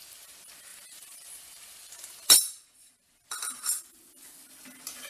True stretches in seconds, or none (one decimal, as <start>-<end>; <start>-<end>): 0.0-0.7; 3.8-5.1